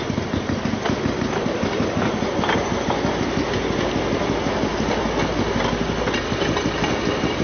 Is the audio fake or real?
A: real